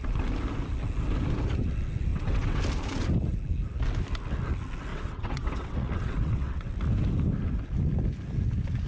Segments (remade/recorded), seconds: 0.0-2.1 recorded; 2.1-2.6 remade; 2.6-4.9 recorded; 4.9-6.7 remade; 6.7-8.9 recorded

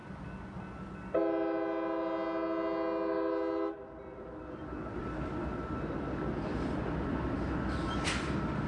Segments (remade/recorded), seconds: 0.0-8.7 recorded